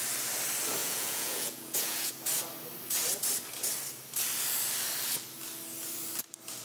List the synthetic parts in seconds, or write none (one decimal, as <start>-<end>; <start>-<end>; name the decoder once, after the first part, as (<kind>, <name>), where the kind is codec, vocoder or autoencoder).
0.8-2.1 (vocoder, Vocos)